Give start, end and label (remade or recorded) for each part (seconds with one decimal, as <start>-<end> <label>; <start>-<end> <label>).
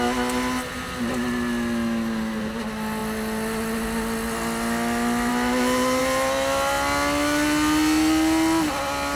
0.0-9.2 recorded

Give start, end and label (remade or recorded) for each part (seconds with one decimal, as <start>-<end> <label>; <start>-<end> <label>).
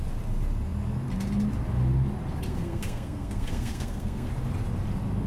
0.0-2.5 recorded; 2.5-4.3 remade; 4.3-5.3 recorded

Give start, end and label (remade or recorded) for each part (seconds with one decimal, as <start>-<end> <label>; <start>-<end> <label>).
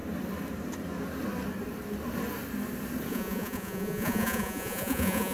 0.0-3.1 recorded; 3.1-5.3 remade